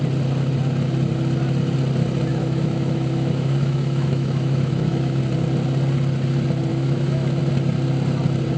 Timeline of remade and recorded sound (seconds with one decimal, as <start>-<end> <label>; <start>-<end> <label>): 0.0-2.3 recorded; 2.3-5.2 remade; 5.2-6.7 recorded; 6.7-7.4 remade; 7.4-8.6 recorded